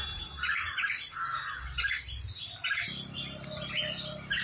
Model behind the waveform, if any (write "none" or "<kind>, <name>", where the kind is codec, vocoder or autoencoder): none